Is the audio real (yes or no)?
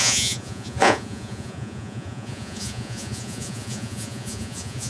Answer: no